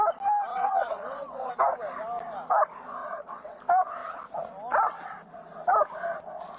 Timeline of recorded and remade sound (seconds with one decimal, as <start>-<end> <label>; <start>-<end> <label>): 0.0-0.5 recorded; 0.5-1.5 remade; 1.5-3.0 recorded; 3.0-3.6 remade; 3.6-6.6 recorded